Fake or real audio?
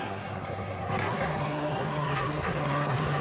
fake